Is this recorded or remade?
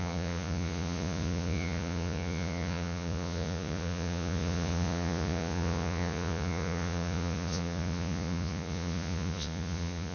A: remade